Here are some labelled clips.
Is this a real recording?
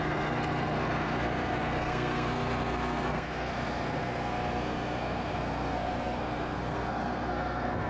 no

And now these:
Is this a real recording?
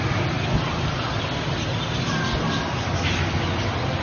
yes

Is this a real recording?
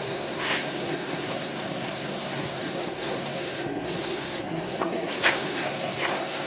no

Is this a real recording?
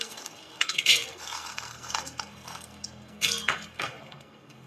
no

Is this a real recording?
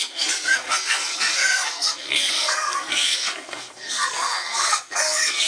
no